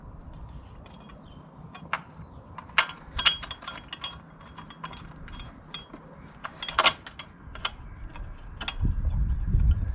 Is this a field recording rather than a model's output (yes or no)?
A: yes